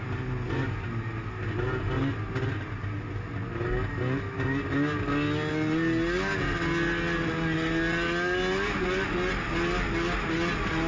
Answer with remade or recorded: recorded